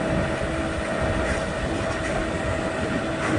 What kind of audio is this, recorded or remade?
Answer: recorded